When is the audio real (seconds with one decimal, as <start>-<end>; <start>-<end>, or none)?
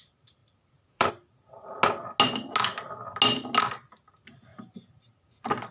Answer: 0.0-0.4; 1.1-4.5